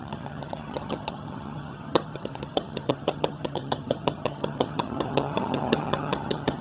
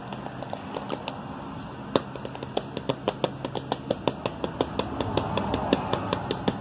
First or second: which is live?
second